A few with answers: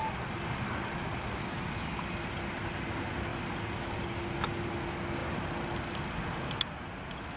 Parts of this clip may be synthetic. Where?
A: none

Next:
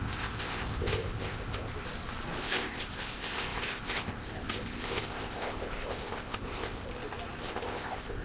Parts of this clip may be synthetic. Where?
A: 0.0-1.7 (codec, ZipCodec); 2.4-6.9; 7.5-8.2

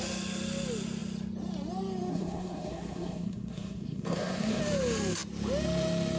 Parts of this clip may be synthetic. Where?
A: 2.1-4.6 (codec, SNAC)

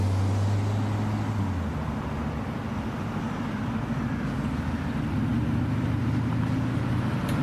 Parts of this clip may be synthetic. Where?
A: none

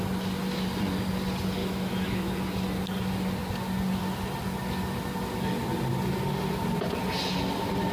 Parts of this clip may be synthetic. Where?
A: 1.6-2.3 (autoencoder, DAC-VAE)

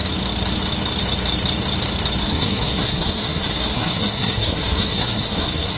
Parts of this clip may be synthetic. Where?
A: 2.2-5.8 (codec, SNAC)

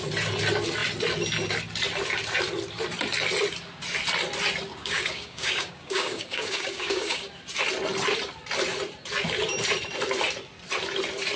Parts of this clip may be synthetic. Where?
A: 4.7-7.3 (codec, DAC)